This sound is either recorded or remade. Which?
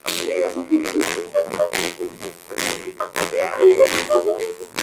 remade